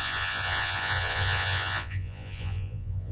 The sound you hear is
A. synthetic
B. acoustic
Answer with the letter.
A